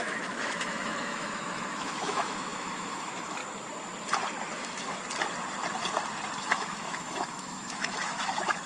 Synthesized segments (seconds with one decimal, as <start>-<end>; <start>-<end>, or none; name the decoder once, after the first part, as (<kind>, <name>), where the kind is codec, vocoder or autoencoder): 0.0-3.4 (autoencoder, DAC-VAE); 6.4-8.7